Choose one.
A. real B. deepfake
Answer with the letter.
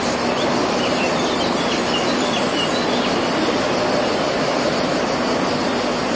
A